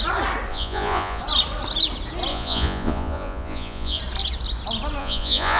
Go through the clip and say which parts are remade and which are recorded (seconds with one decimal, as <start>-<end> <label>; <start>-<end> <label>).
0.0-0.5 recorded; 0.5-1.2 remade; 1.2-2.3 recorded; 2.3-4.0 remade; 4.0-5.0 recorded; 5.0-5.6 remade